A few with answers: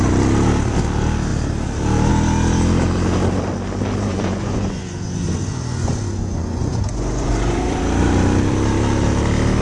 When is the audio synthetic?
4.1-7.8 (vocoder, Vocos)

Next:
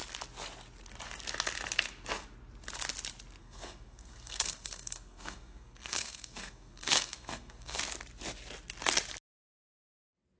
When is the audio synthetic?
3.4-7.8 (codec, SNAC)